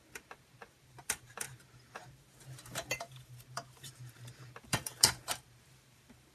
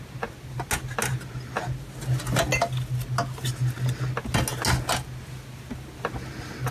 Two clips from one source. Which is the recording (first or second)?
second